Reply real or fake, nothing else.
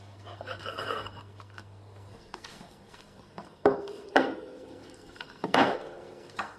fake